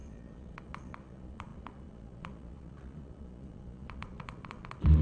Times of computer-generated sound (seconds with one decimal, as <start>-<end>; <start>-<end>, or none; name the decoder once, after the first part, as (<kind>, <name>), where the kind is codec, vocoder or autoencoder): 0.0-5.0 (vocoder, Vocos)